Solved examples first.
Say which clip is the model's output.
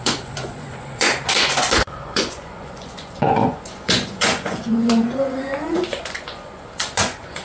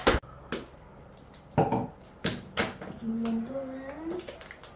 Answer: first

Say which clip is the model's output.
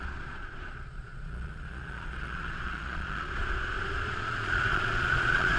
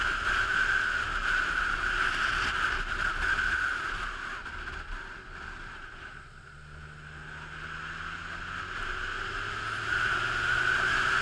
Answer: first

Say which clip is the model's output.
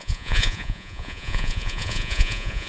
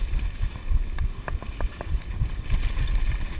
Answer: first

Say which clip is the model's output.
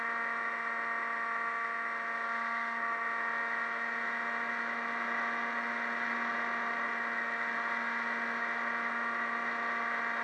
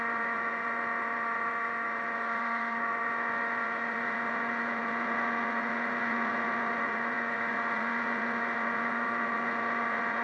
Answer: second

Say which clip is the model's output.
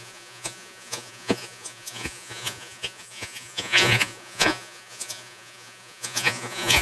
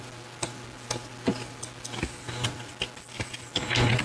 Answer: first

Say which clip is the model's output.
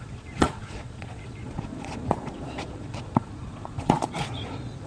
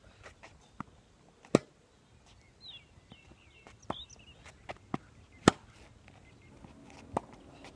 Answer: first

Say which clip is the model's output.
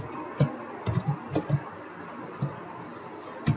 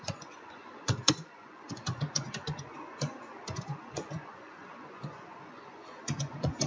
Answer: second